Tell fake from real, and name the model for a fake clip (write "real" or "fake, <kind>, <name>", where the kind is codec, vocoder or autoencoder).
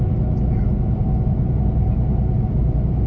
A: real